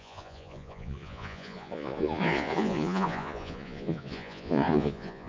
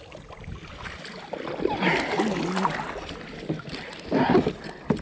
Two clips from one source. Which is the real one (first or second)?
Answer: second